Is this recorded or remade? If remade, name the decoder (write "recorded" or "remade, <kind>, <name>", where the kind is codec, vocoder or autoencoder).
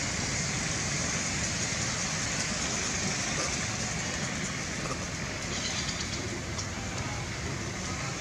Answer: recorded